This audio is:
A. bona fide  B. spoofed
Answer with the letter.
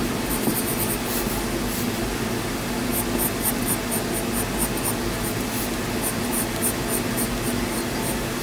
A